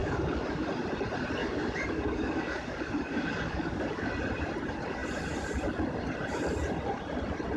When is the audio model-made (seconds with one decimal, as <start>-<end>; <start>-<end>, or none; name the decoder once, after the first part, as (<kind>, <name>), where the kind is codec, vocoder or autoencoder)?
0.0-0.7 (codec, DAC); 1.4-4.1